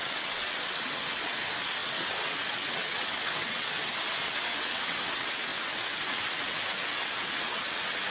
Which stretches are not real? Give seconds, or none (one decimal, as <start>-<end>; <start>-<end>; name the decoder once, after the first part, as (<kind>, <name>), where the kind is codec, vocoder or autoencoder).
0.0-8.1 (vocoder, WaveNeXt)